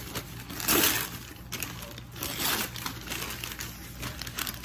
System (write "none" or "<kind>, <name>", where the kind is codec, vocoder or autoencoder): none